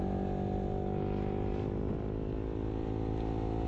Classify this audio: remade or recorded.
recorded